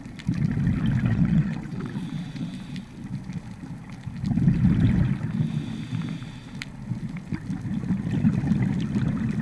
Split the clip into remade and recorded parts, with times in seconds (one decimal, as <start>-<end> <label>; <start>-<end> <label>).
0.0-1.1 recorded; 1.1-2.5 remade; 2.5-9.4 recorded